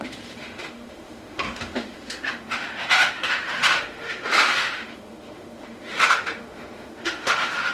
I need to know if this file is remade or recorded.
remade